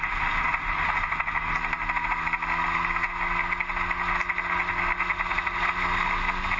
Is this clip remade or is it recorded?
recorded